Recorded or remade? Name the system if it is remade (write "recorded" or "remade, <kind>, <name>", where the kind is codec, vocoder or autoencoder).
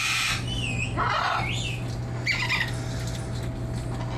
recorded